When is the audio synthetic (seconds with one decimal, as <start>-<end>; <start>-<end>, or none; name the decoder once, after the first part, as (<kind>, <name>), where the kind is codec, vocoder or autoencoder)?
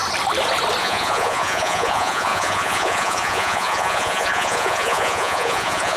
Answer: 0.8-6.0 (vocoder, Vocos)